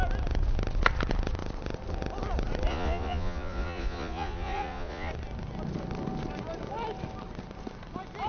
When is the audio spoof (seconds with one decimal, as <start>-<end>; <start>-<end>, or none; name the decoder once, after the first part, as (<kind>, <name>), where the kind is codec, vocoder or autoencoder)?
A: 2.7-5.1 (vocoder, Vocos)